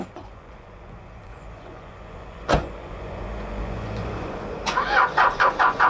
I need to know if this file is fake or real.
fake